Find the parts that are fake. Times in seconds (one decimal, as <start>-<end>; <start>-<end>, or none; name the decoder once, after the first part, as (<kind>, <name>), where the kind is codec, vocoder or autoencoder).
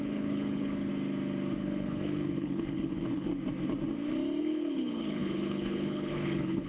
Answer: 0.0-0.9 (codec, HILCodec); 1.6-3.3; 4.4-6.7